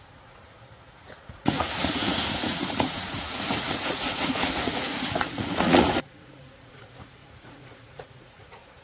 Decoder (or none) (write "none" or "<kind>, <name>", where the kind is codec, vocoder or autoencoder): vocoder, Vocos